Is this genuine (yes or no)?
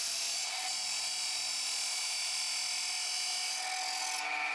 yes